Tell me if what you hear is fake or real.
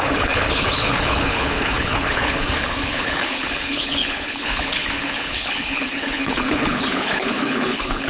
fake